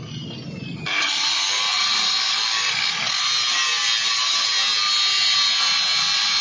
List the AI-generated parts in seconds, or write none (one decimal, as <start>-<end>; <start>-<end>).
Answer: none